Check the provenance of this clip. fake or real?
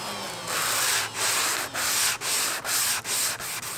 real